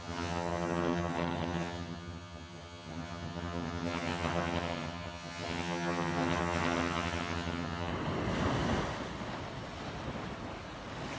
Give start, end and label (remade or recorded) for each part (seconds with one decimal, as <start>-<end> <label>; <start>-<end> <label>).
0.0-7.9 remade; 7.9-11.2 recorded